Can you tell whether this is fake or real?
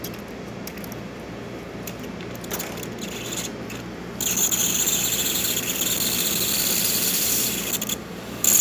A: real